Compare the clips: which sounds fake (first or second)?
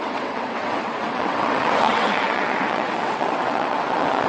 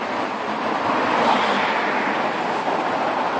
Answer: first